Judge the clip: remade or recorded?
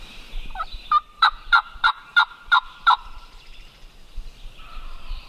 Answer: remade